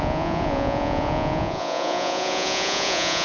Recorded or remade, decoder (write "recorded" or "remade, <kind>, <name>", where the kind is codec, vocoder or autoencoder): remade, vocoder, Vocos